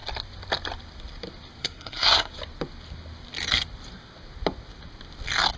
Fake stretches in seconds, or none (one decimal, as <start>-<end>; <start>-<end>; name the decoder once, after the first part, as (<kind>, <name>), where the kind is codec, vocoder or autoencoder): 1.6-2.3 (codec, SNAC)